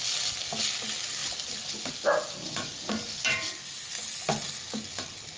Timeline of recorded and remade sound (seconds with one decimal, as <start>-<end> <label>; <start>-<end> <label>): 0.0-1.2 recorded; 1.2-1.9 remade; 1.9-2.4 recorded; 2.4-3.6 remade; 3.6-5.4 recorded